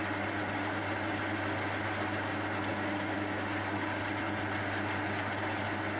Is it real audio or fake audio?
real